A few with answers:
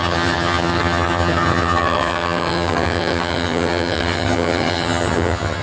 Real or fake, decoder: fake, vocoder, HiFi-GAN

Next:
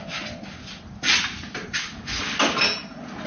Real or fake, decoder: real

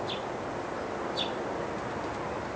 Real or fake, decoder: real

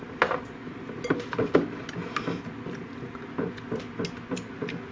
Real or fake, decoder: real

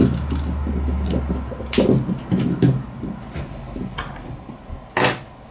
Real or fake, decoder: real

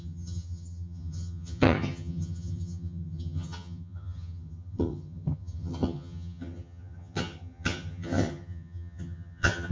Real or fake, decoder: fake, vocoder, HiFi-GAN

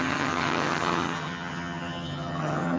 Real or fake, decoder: fake, vocoder, HiFi-GAN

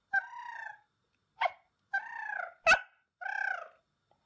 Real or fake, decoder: real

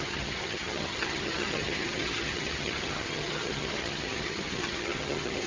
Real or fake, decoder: fake, vocoder, HiFi-GAN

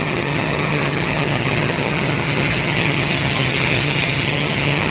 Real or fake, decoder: fake, vocoder, HiFi-GAN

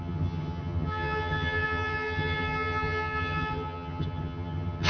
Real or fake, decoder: fake, vocoder, HiFi-GAN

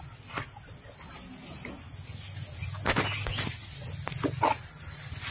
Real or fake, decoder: real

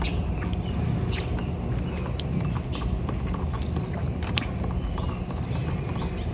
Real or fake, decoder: real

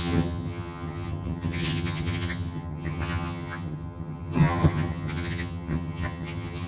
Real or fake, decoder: fake, vocoder, HiFi-GAN